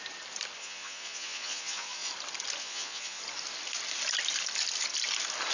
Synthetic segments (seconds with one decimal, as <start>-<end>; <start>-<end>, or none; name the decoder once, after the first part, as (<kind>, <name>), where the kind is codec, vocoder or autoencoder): 0.6-2.1 (vocoder, Vocos); 2.6-3.2